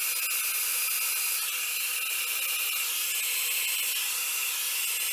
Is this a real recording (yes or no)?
yes